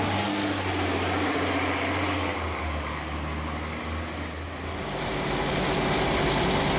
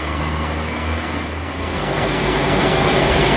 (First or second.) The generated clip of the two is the second